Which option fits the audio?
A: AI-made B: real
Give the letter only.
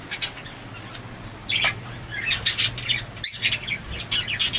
B